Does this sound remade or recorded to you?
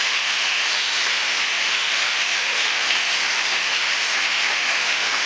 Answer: remade